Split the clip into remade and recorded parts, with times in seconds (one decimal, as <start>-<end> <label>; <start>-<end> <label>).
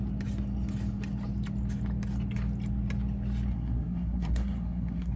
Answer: 0.0-3.5 recorded; 3.5-5.2 remade